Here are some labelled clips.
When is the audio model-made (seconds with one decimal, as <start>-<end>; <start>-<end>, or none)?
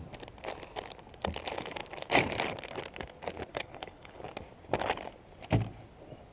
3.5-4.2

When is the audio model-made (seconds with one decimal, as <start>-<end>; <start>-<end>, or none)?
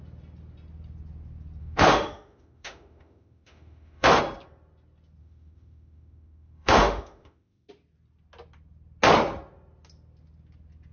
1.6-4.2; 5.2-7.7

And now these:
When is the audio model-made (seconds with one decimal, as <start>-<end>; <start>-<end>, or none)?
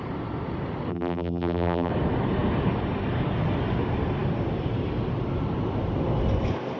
0.9-1.9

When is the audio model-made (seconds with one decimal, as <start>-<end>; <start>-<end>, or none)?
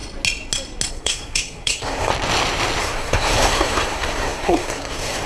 0.9-2.1; 2.8-5.3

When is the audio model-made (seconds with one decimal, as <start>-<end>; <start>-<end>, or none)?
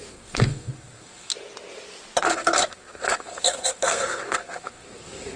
0.0-1.3; 2.2-5.4